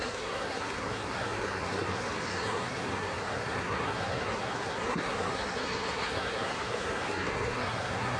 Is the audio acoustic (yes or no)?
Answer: no